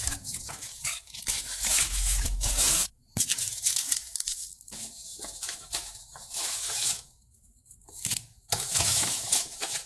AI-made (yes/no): yes